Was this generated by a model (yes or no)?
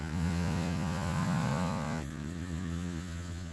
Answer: yes